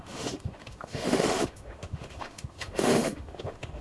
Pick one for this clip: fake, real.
fake